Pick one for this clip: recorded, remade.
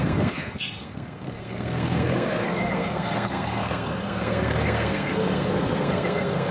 remade